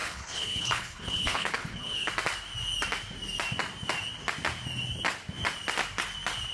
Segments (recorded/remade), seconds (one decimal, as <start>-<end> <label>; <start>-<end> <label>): 0.0-2.1 remade; 2.1-6.5 recorded